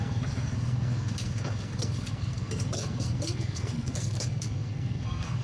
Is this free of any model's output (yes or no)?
no